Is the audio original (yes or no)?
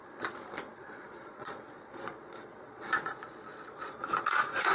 no